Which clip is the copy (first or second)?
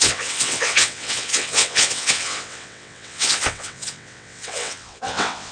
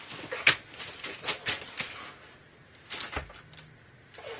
first